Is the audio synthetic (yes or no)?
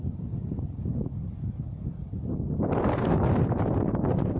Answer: no